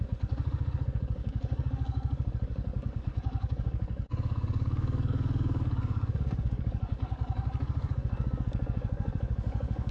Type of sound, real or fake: fake